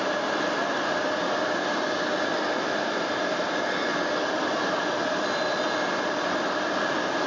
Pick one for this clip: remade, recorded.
recorded